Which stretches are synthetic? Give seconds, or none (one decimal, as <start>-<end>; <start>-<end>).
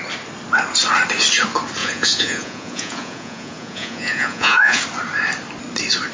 1.8-4.8